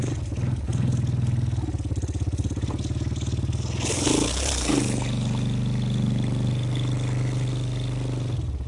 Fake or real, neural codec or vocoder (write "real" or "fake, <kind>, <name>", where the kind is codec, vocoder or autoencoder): real